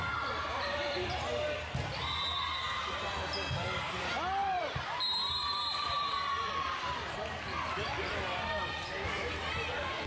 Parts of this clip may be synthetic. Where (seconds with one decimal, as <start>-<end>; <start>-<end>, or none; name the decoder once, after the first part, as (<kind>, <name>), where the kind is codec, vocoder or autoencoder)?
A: 0.5-1.2 (vocoder, BigVGAN v2); 4.4-7.4